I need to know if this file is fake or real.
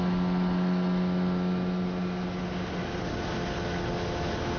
real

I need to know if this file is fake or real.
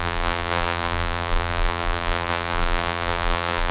fake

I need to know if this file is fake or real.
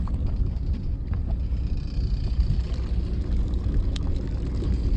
real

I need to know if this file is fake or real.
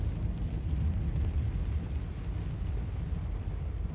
real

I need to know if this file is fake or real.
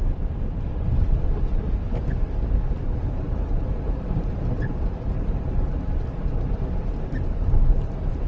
fake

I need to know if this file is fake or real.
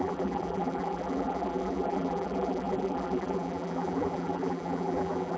fake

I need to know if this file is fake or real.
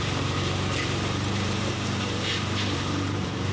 fake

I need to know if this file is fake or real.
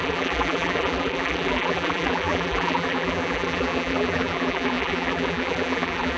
fake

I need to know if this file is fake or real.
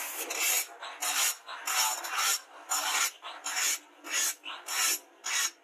real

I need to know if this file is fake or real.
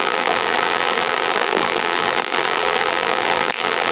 fake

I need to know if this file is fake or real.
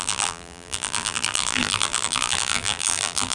fake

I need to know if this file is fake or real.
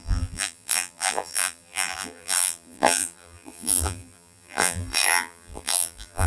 fake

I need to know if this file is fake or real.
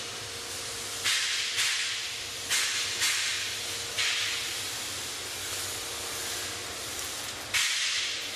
real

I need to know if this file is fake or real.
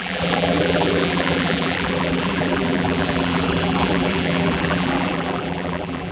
fake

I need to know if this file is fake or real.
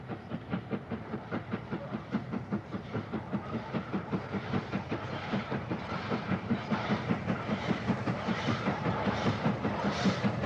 fake